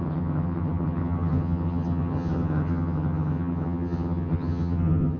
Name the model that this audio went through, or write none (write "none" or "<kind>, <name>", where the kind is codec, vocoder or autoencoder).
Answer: vocoder, HiFi-GAN